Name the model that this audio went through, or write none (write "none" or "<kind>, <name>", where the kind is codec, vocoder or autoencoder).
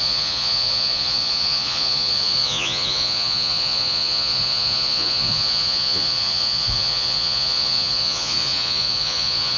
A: vocoder, Vocos